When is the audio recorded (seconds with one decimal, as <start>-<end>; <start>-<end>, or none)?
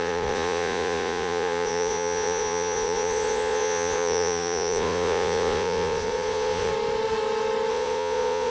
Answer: 6.7-7.7